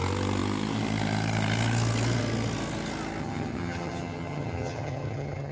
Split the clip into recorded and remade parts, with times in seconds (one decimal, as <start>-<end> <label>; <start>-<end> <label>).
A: 0.0-3.2 recorded; 3.2-5.5 remade